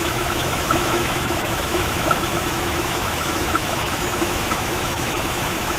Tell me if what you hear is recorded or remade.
remade